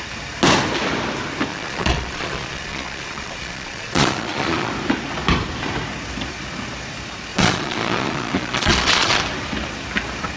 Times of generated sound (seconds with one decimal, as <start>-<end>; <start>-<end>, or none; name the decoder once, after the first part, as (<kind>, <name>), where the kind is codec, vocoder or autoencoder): 1.5-4.7 (vocoder, Vocos); 7.3-9.2